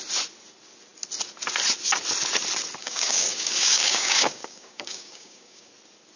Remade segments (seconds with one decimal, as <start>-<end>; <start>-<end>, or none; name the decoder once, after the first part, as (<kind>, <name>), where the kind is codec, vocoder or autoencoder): 2.8-5.7 (codec, DAC)